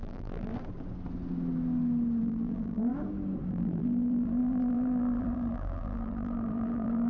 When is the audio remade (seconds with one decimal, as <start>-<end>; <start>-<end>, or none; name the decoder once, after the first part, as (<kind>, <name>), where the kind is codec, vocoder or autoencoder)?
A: 0.0-0.5 (vocoder, BigVGAN v2); 2.2-2.9; 3.5-7.1